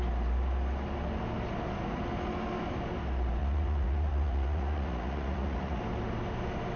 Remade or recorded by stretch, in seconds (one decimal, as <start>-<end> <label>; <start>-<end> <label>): 0.0-3.4 recorded; 3.4-5.8 remade; 5.8-6.8 recorded